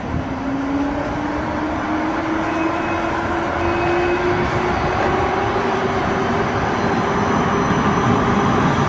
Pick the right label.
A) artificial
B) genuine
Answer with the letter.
B